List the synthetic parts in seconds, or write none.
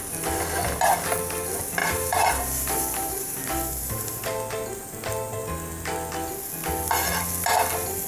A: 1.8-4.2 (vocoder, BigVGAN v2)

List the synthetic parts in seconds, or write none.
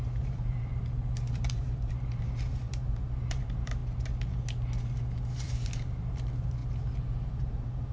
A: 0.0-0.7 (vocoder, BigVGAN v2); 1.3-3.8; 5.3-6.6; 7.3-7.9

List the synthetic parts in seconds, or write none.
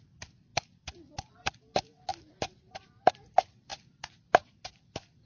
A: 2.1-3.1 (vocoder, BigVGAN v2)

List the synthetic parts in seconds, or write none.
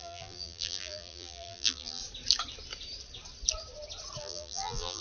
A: 0.0-2.0 (vocoder, BigVGAN v2); 4.2-5.0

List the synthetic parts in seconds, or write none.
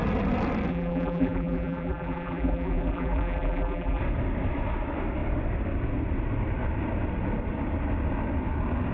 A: 0.7-4.0 (vocoder, BigVGAN v2)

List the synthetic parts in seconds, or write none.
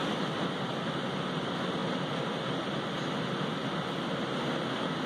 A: none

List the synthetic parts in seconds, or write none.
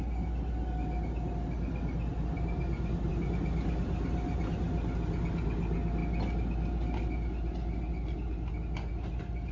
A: none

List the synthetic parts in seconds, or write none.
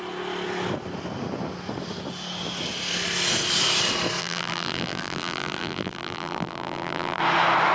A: 4.2-7.2 (vocoder, BigVGAN v2)